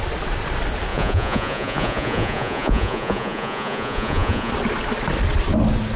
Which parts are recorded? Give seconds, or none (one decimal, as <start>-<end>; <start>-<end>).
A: 0.0-0.9; 4.5-6.0